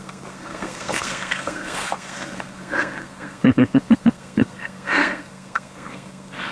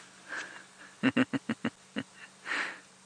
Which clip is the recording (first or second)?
second